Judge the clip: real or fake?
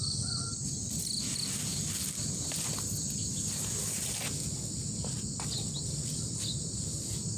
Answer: real